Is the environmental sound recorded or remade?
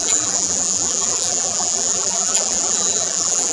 remade